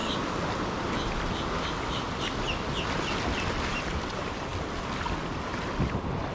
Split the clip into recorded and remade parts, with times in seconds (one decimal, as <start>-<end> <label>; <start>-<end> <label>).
0.0-6.3 recorded